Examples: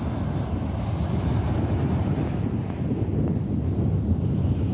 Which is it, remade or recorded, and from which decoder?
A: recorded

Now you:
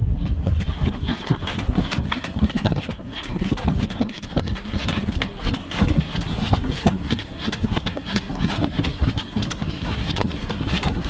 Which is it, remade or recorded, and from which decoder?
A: remade, codec, SNAC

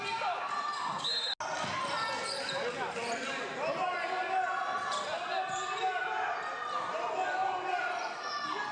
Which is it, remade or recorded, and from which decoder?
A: recorded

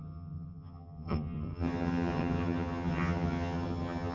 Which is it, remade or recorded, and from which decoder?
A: remade, vocoder, HiFi-GAN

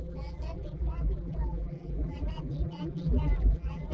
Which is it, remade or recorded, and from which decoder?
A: remade, vocoder, BigVGAN v2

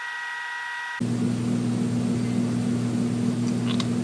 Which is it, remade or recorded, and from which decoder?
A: recorded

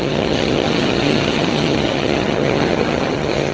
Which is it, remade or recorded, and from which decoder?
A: remade, vocoder, HiFi-GAN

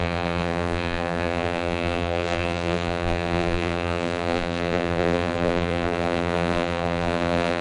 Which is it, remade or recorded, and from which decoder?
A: remade, vocoder, BigVGAN v2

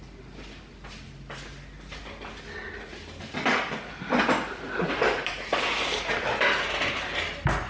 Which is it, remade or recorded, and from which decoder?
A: recorded